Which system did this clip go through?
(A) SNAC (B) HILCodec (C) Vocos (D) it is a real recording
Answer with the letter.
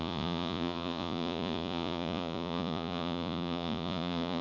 C